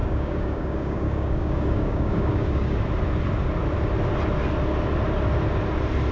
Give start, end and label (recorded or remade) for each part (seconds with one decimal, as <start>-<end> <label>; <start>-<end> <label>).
0.0-2.8 remade; 2.8-6.1 recorded